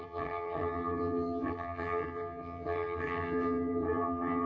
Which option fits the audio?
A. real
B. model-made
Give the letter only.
B